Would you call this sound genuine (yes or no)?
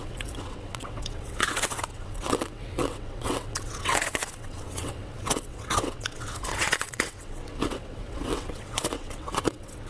no